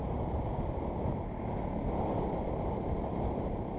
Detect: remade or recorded recorded